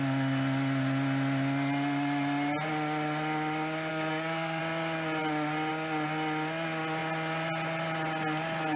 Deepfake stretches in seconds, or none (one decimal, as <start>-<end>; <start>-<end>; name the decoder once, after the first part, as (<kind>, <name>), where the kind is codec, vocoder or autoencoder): 3.9-4.6 (codec, SNAC)